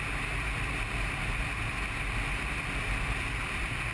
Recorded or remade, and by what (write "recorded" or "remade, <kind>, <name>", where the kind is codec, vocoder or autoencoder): recorded